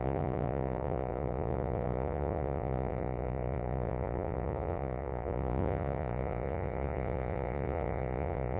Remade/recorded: remade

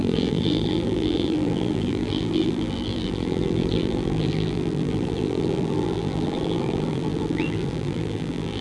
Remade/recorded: remade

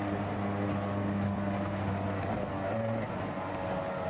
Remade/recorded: recorded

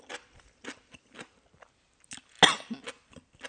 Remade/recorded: recorded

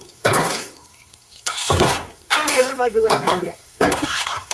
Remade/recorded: remade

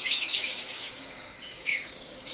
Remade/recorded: remade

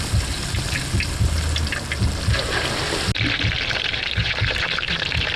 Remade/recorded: recorded